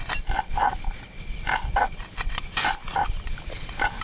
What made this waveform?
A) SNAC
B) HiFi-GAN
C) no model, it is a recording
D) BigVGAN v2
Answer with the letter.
D